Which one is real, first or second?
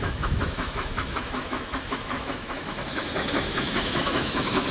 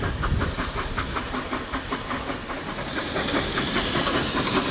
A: second